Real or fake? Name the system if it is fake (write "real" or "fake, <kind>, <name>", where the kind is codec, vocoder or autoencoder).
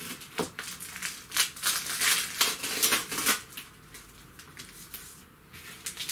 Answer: real